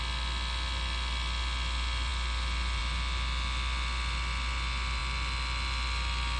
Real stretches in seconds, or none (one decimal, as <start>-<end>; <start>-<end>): 0.0-6.4